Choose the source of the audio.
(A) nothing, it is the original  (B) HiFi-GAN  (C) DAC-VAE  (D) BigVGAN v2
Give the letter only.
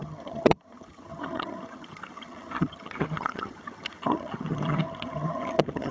B